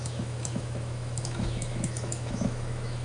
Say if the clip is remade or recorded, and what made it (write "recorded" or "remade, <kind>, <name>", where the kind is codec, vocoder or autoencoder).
remade, autoencoder, DAC-VAE